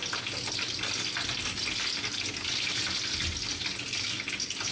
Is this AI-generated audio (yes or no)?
no